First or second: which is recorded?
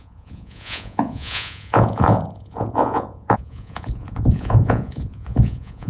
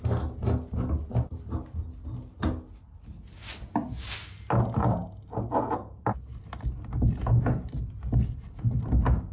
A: second